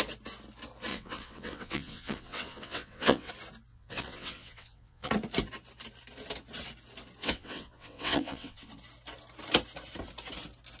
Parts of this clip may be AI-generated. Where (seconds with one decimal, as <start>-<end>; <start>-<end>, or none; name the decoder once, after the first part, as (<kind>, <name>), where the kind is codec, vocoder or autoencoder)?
0.9-3.3 (vocoder, WaveNeXt); 3.7-5.1; 7.2-8.7